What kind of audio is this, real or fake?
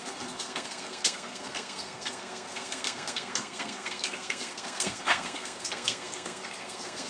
fake